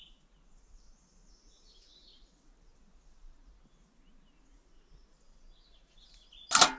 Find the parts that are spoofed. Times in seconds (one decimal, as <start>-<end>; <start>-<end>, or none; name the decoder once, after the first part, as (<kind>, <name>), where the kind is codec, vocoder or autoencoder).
none